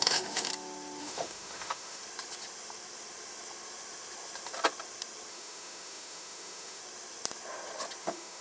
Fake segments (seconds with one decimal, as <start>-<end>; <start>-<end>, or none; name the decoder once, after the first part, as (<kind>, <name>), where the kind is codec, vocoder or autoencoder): 0.0-0.5 (autoencoder, DAC-VAE); 1.0-2.0; 5.3-6.8; 8.0-8.4